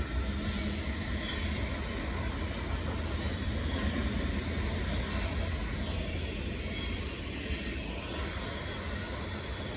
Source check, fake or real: real